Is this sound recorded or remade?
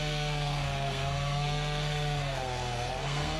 remade